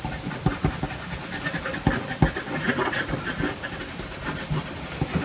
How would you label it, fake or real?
real